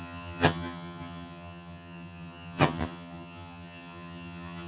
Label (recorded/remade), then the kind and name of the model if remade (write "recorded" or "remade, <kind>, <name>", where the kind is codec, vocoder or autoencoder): remade, vocoder, HiFi-GAN